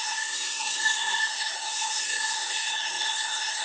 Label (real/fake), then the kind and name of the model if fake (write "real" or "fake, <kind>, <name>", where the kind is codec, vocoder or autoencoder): fake, codec, SNAC